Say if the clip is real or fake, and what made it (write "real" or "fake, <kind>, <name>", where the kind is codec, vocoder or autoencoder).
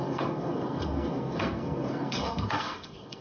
fake, codec, SNAC